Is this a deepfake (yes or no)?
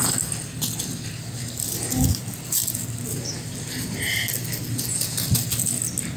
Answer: no